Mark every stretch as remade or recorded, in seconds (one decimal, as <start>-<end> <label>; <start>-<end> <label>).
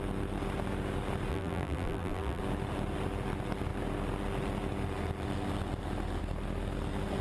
0.0-1.3 recorded; 1.3-2.4 remade; 2.4-7.2 recorded